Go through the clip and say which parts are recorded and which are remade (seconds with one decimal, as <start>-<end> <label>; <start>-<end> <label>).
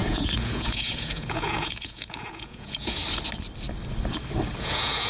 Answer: 0.0-3.0 remade; 3.0-4.6 recorded; 4.6-5.1 remade